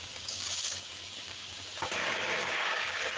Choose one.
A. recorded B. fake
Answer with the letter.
B